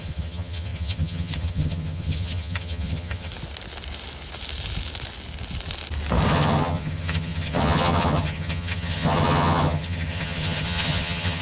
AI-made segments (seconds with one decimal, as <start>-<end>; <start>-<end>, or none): 0.0-3.3; 6.3-11.4